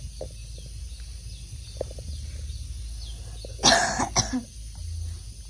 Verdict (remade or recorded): recorded